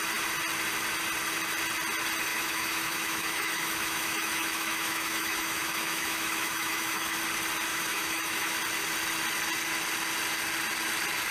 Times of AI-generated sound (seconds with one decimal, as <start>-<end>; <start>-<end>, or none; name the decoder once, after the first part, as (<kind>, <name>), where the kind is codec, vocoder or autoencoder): 2.3-7.2 (autoencoder, DAC-VAE); 7.7-8.6